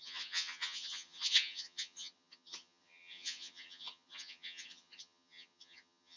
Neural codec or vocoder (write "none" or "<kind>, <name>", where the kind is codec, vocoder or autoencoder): vocoder, HiFi-GAN